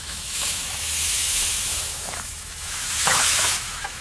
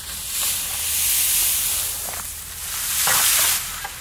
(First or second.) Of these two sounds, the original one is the second